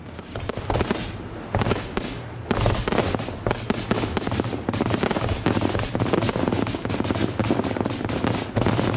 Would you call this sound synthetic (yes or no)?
no